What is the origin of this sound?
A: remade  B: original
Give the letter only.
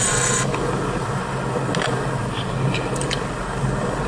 B